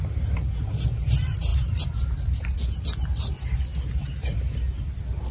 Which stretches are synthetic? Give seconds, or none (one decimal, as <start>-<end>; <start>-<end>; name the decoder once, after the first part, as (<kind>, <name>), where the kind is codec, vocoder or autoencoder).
none